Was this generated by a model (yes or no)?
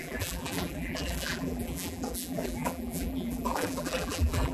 yes